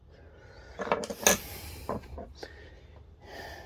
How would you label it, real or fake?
real